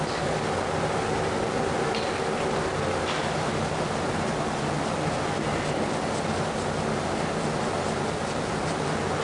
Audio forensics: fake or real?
real